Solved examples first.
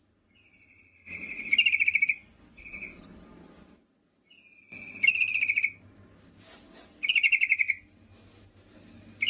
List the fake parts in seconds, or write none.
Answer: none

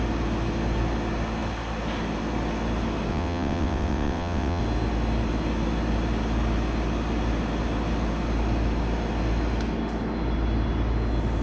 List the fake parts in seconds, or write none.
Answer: 3.1-4.6 (vocoder, WaveNeXt)